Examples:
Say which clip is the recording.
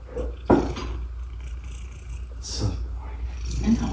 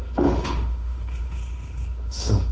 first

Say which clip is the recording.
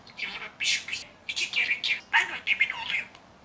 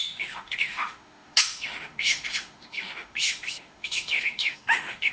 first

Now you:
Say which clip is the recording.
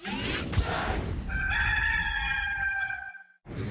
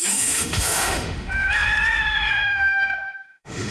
first